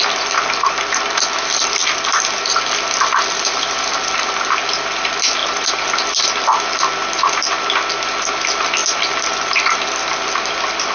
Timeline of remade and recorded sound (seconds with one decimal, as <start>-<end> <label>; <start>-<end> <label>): 0.0-1.8 recorded; 1.8-2.5 remade; 2.5-8.8 recorded; 8.8-10.9 remade